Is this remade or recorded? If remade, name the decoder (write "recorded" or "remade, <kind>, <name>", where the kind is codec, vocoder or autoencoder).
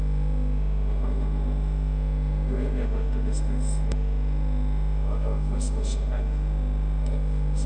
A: remade, autoencoder, DAC-VAE